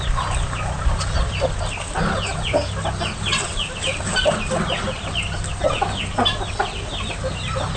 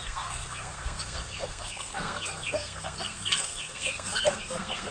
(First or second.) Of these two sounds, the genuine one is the first